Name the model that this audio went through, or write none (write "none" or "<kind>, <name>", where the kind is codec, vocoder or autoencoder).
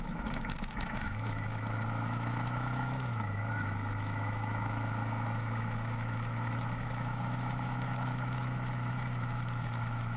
autoencoder, DAC-VAE